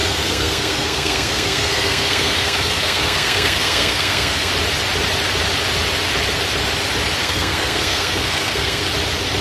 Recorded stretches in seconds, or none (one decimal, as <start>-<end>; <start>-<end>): 4.5-7.2; 8.8-9.4